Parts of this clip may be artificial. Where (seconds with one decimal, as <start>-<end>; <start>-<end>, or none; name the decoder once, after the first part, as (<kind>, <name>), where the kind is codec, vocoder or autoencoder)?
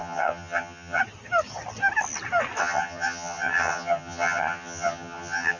0.0-1.0 (vocoder, HiFi-GAN); 2.6-5.6